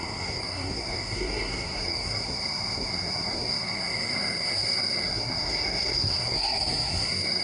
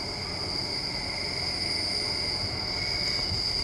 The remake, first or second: first